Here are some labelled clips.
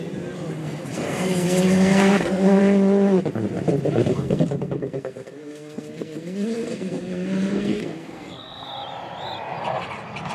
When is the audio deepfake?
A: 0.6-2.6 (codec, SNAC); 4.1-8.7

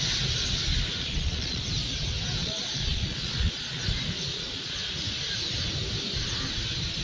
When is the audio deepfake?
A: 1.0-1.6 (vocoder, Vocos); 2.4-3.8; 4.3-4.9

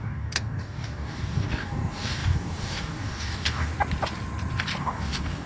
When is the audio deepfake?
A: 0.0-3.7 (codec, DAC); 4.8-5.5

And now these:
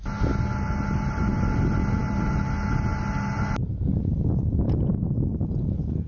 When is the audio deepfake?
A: none

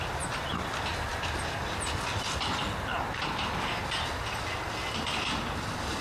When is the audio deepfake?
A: none

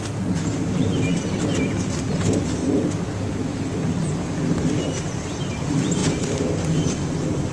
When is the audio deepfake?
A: none

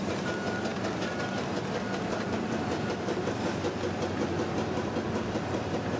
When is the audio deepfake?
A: none

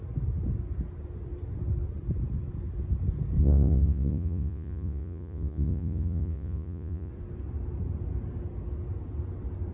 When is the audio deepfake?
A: 3.4-7.1 (vocoder, Vocos)